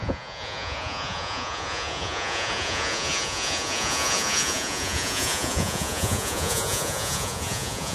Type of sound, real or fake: fake